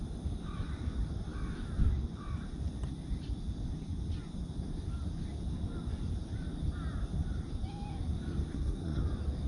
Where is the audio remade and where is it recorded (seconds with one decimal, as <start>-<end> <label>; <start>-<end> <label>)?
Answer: 0.0-8.5 recorded; 8.5-9.0 remade; 9.0-9.5 recorded